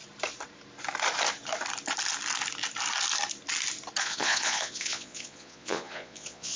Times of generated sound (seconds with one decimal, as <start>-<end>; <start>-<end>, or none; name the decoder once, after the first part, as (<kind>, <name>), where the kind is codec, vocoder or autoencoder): 4.0-6.6 (vocoder, Vocos)